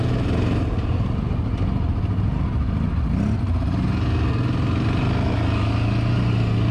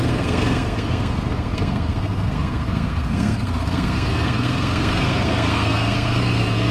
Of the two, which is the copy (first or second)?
second